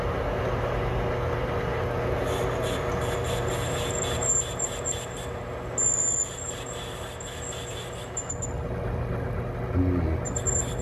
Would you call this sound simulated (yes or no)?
no